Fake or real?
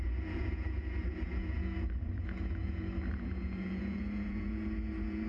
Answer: fake